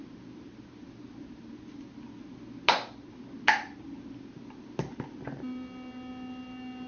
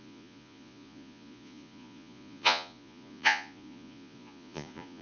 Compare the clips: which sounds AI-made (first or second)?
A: second